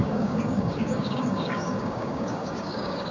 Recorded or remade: remade